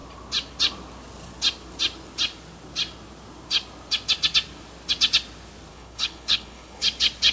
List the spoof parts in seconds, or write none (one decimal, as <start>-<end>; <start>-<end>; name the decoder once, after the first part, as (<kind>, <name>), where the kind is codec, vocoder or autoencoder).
5.7-6.8 (codec, HILCodec)